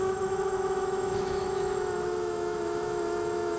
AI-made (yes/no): yes